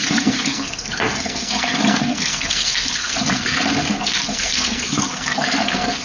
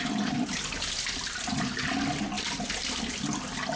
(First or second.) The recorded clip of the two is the second